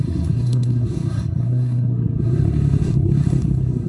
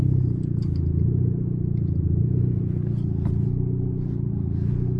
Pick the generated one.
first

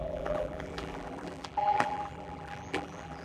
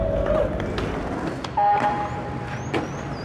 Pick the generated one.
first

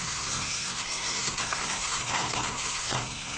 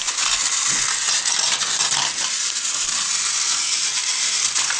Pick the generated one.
first